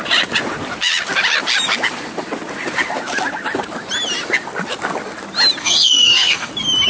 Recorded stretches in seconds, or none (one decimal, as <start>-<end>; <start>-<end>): 0.0-5.6; 6.5-6.9